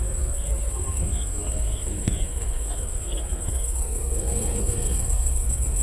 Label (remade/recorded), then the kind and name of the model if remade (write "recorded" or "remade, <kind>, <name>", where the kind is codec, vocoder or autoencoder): remade, codec, SNAC